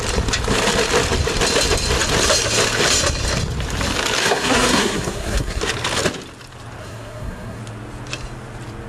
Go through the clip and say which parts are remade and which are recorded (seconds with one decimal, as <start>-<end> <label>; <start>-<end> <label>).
0.0-4.2 recorded; 4.2-5.6 remade; 5.6-6.8 recorded; 6.8-7.6 remade; 7.6-8.9 recorded